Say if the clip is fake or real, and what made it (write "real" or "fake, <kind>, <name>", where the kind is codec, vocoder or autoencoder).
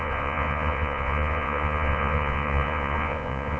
fake, vocoder, Vocos